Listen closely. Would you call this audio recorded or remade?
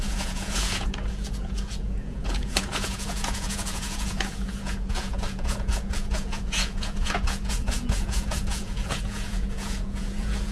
remade